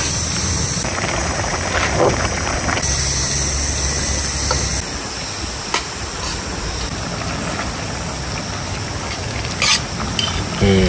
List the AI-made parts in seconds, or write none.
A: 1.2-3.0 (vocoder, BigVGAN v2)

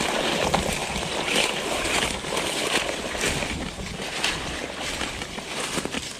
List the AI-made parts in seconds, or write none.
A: 0.0-0.8 (vocoder, BigVGAN v2); 4.5-6.2

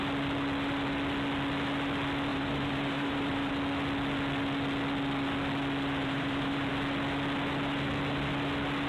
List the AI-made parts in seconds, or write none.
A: 2.3-3.5 (vocoder, BigVGAN v2); 6.0-6.7

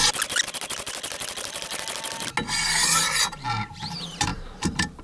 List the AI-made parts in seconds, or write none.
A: 4.3-5.0 (vocoder, BigVGAN v2)

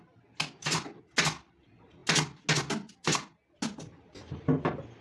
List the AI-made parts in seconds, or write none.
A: none